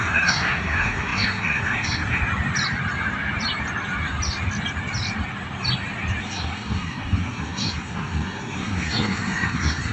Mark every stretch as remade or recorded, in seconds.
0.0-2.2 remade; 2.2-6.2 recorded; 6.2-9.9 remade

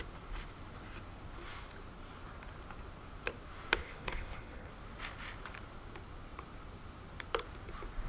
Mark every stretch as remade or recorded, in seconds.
0.0-3.8 recorded; 3.8-4.7 remade; 4.7-8.1 recorded